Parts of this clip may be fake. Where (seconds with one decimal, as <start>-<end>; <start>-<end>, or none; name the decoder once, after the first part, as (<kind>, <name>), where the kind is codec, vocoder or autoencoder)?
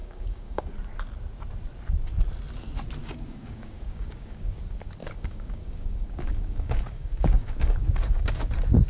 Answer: 0.0-0.7 (codec, DAC); 3.0-4.6; 5.0-8.5